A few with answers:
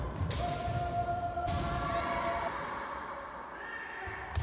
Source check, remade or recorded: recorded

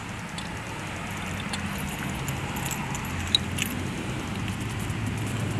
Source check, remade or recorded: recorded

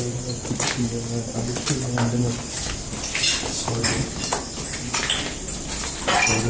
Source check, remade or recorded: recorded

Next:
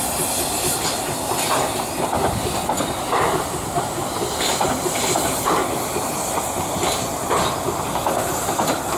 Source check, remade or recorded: recorded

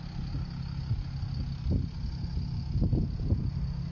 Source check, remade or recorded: recorded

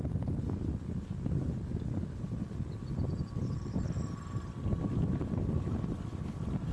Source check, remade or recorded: recorded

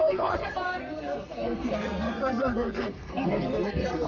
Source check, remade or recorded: remade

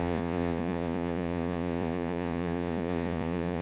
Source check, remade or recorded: remade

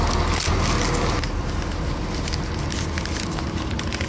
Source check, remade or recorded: recorded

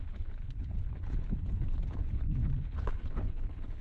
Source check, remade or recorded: remade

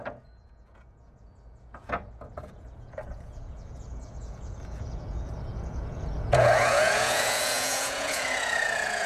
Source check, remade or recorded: remade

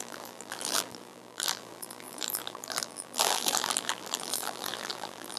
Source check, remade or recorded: remade